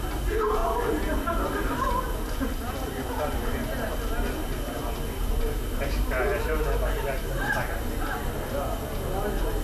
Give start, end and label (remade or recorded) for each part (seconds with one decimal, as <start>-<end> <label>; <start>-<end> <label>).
0.0-9.6 recorded